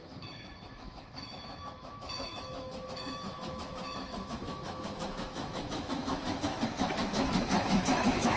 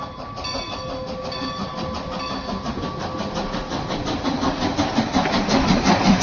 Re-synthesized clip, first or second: first